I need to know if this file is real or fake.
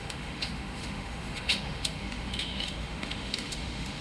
fake